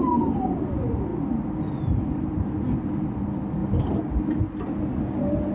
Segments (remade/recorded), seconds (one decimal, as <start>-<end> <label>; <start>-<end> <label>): 0.0-5.5 recorded

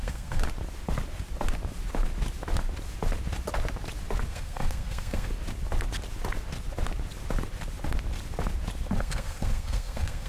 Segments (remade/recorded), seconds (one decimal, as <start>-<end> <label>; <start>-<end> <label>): 0.0-0.4 remade; 0.4-4.3 recorded; 4.3-5.3 remade; 5.3-9.0 recorded; 9.0-10.3 remade